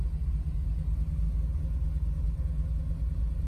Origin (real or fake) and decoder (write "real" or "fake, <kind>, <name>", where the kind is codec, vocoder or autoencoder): real